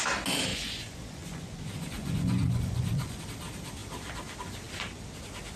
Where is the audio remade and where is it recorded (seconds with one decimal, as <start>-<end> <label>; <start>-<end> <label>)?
0.0-0.5 recorded; 0.5-3.2 remade; 3.2-5.6 recorded